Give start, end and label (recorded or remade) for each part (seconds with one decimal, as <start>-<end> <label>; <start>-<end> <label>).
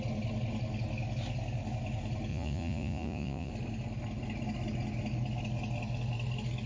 0.0-2.3 recorded; 2.3-3.5 remade; 3.5-6.7 recorded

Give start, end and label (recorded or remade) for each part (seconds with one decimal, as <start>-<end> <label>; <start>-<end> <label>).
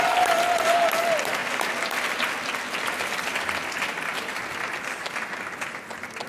0.0-6.3 recorded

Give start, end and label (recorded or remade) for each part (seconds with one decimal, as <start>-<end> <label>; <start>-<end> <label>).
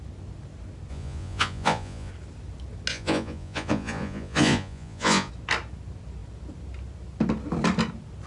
0.0-0.9 recorded; 0.9-2.1 remade; 2.1-2.9 recorded; 2.9-5.3 remade; 5.3-8.3 recorded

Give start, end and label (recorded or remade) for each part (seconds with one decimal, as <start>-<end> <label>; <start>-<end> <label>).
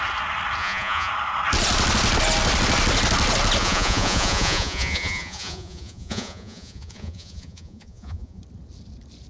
0.0-0.6 recorded; 0.6-1.1 remade; 1.1-3.6 recorded; 3.6-8.4 remade; 8.4-9.3 recorded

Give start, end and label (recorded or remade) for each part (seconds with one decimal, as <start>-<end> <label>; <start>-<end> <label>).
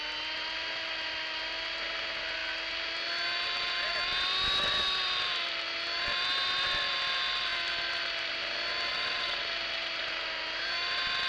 0.0-8.9 recorded; 8.9-9.4 remade; 9.4-11.3 recorded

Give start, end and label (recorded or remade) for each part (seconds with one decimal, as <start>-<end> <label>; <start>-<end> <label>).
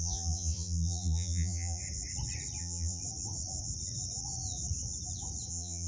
0.0-1.8 remade; 1.8-2.6 recorded; 2.6-3.0 remade; 3.0-5.5 recorded; 5.5-5.9 remade